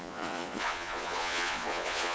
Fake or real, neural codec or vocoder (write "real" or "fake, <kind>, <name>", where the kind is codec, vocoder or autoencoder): fake, vocoder, Vocos